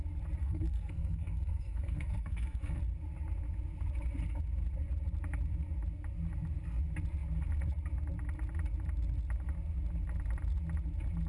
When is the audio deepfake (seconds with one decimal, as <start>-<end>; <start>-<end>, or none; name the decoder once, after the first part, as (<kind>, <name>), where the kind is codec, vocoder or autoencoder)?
0.4-2.8 (codec, SNAC)